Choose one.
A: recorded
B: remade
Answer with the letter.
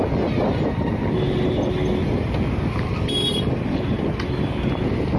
A